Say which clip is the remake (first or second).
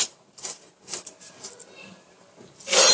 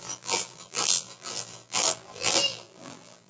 second